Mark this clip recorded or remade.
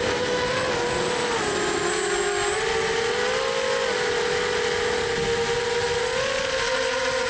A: recorded